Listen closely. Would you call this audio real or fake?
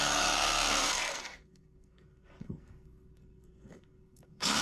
fake